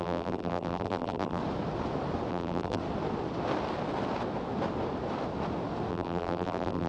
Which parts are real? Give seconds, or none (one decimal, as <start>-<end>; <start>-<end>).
1.4-2.3; 2.8-5.9